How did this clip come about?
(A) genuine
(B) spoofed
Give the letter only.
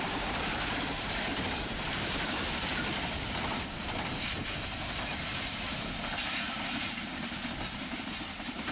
B